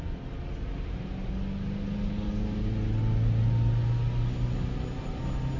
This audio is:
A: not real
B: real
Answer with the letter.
B